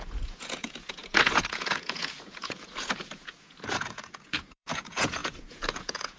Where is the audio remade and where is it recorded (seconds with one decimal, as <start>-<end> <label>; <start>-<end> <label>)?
0.0-6.2 remade